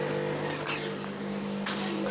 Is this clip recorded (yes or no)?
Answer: yes